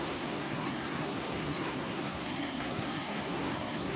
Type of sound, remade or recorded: remade